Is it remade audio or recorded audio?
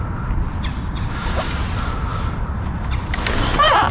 recorded